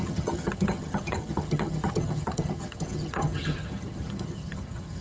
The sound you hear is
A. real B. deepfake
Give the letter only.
B